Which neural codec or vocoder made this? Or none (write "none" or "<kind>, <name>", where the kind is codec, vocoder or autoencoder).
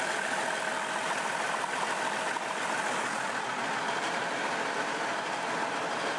none